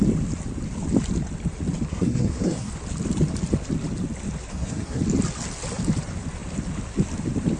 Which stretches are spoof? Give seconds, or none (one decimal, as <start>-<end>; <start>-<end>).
1.9-2.7; 4.5-5.0